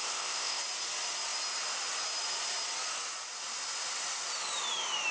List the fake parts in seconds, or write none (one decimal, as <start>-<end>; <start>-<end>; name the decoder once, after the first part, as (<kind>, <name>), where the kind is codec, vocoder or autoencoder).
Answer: 0.0-0.6 (codec, ZipCodec)